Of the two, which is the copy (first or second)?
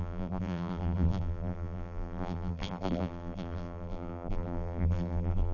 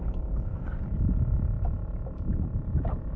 first